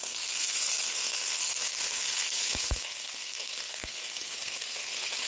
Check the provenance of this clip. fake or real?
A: fake